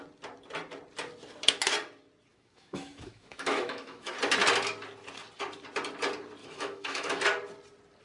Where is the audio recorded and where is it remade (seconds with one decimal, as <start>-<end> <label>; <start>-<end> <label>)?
0.0-2.3 recorded; 2.3-4.1 remade; 4.1-6.4 recorded; 6.4-7.2 remade; 7.2-8.0 recorded